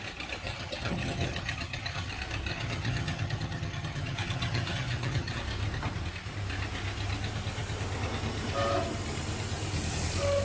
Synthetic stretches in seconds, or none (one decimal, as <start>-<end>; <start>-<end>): 0.4-2.1; 2.5-5.4

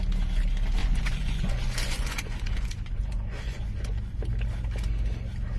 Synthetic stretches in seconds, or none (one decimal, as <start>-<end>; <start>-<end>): 0.8-4.2

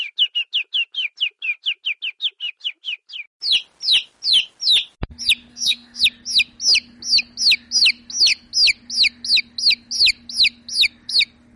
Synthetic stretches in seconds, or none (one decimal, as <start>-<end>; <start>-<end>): 5.5-6.0